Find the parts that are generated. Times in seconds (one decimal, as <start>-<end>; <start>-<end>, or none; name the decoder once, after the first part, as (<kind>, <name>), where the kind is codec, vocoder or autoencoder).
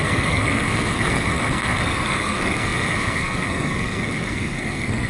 0.0-5.1 (codec, SNAC)